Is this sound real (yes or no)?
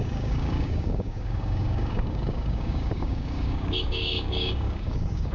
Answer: no